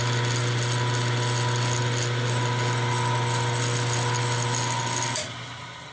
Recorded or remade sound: recorded